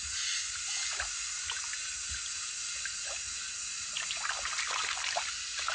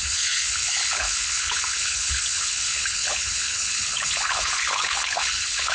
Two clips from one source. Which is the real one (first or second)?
first